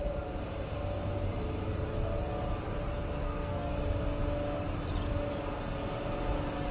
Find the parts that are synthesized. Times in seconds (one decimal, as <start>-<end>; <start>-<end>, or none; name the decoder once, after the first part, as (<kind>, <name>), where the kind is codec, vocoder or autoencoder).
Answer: 3.2-3.7 (codec, SNAC)

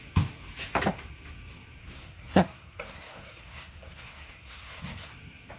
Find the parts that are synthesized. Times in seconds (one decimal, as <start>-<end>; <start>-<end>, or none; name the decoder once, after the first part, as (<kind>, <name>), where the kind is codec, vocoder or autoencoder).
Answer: 1.8-5.1 (codec, SNAC)

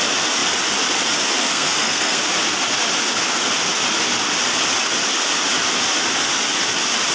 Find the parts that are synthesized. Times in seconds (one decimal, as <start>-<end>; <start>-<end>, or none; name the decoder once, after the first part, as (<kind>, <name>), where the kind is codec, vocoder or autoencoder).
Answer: 1.5-2.2 (codec, SNAC)

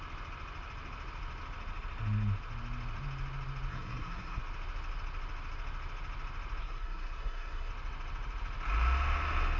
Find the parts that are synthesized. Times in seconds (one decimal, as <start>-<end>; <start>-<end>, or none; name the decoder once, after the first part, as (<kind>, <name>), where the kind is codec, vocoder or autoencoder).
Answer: 3.7-4.4 (codec, SNAC); 6.6-7.7

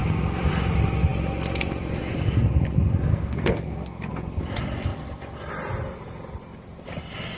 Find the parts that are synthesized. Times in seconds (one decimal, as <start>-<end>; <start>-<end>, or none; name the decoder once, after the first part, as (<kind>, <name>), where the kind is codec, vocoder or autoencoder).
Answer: 3.1-4.1 (codec, SNAC)

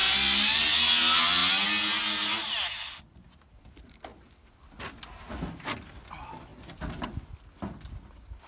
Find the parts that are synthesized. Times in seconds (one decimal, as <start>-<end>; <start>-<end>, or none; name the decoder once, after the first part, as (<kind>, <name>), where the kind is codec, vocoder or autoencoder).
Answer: none

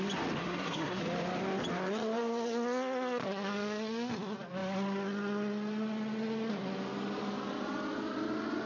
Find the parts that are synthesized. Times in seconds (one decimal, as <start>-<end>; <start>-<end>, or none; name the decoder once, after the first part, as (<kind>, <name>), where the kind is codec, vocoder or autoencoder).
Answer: 0.4-1.0 (codec, SNAC)